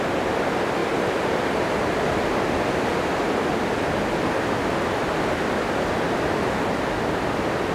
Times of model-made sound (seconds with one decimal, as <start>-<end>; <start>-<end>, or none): none